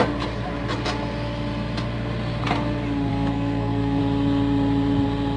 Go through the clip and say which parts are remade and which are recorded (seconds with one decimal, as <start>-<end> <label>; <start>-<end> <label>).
0.0-3.1 recorded; 3.1-4.0 remade; 4.0-5.4 recorded